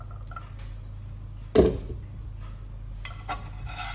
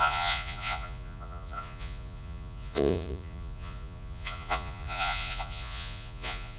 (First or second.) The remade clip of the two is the second